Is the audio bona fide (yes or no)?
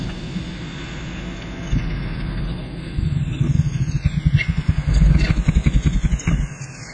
yes